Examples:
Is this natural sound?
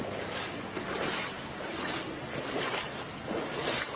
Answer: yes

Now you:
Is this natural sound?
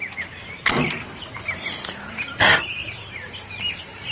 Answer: no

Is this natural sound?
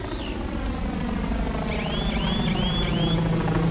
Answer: yes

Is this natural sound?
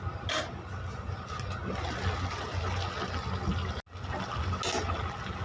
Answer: yes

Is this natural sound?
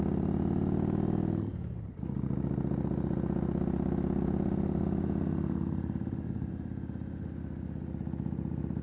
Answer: yes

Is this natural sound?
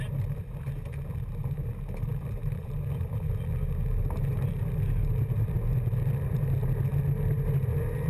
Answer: yes